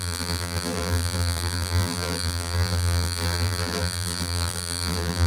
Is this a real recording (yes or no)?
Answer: no